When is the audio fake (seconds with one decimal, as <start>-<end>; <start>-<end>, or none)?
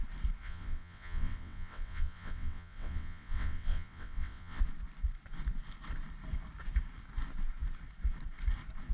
0.4-4.6